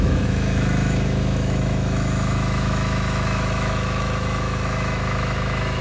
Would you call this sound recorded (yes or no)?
no